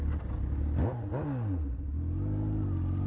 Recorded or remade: recorded